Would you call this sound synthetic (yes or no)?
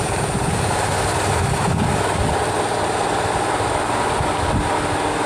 no